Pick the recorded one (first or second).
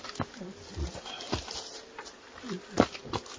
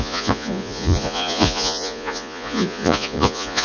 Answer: first